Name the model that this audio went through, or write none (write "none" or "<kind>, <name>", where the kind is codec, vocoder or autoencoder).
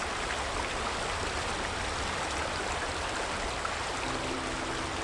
none